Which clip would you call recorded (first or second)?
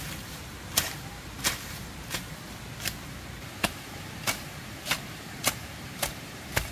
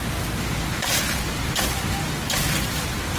second